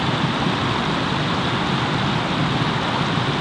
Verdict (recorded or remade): recorded